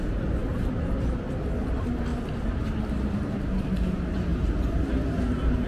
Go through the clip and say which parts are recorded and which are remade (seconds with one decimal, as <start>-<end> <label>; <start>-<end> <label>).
0.0-5.7 recorded